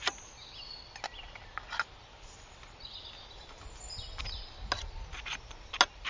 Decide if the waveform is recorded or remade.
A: recorded